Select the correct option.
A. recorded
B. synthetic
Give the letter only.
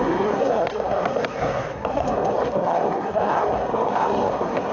B